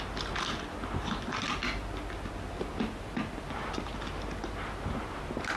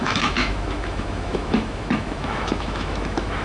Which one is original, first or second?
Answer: first